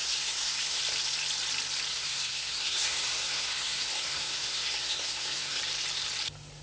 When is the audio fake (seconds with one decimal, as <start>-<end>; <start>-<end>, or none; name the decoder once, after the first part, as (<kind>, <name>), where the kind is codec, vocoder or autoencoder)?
0.0-0.8 (codec, SNAC); 1.9-5.6